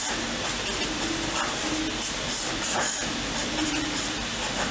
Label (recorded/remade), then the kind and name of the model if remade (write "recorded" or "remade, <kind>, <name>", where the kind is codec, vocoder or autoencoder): recorded